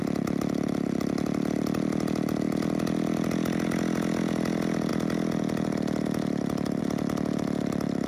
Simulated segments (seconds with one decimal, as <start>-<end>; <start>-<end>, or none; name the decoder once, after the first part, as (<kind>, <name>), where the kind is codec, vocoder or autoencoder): none